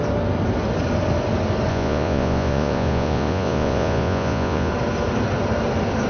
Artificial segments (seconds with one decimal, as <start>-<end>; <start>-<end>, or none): 1.7-4.7